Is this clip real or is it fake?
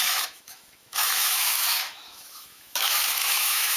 fake